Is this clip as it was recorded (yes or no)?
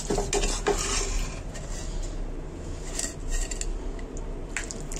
yes